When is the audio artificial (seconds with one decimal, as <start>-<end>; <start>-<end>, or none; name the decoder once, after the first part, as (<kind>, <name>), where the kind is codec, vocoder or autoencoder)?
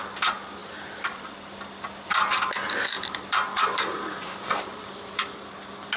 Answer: 0.6-1.3 (vocoder, BigVGAN v2); 2.9-5.5